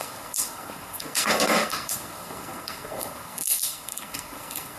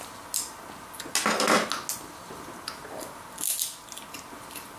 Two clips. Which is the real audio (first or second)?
second